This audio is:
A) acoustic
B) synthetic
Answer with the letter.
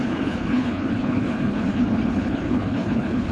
B